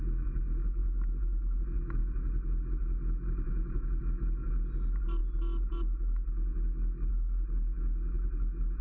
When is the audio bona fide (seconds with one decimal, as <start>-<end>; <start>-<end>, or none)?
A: 0.0-8.8